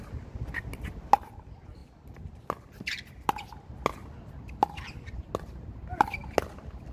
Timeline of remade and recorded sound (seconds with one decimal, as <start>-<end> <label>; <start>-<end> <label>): 0.0-6.9 recorded